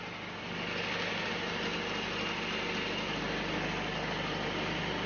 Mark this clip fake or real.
real